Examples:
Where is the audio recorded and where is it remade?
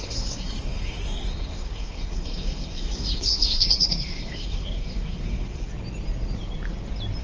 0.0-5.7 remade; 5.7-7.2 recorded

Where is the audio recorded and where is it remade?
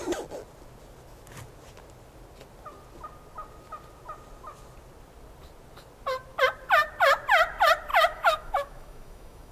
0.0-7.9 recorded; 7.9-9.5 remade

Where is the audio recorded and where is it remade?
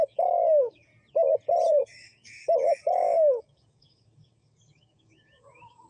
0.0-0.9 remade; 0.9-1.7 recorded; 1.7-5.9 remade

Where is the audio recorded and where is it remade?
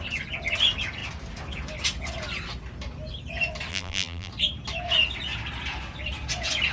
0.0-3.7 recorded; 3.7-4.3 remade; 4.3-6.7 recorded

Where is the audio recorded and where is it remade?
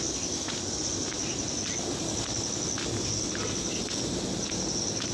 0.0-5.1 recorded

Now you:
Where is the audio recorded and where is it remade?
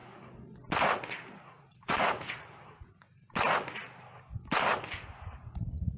0.0-1.4 recorded; 1.4-3.0 remade; 3.0-5.4 recorded; 5.4-6.0 remade